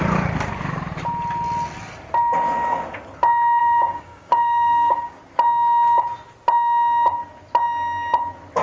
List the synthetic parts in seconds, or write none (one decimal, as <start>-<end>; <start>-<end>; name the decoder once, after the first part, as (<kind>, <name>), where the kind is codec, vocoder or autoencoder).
3.6-5.2 (codec, DAC)